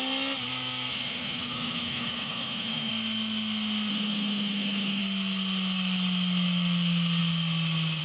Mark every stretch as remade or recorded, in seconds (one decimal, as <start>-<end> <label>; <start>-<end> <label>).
0.0-0.9 recorded; 0.9-2.9 remade; 2.9-3.9 recorded; 3.9-5.0 remade; 5.0-8.0 recorded